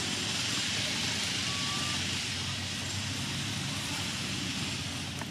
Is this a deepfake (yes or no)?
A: no